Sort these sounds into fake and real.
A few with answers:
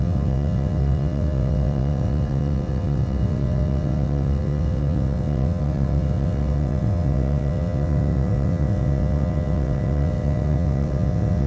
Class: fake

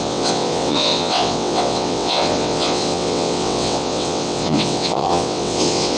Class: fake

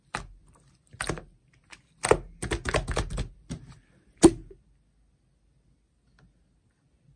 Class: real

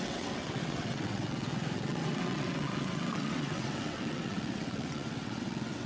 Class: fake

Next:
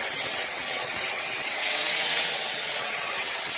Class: fake